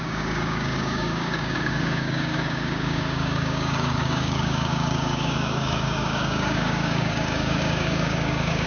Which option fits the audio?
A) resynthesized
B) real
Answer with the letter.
A